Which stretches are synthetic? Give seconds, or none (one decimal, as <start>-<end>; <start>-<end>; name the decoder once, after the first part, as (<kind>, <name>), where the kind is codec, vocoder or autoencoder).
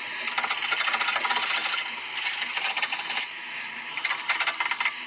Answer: none